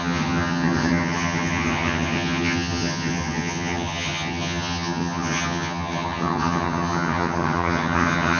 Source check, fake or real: fake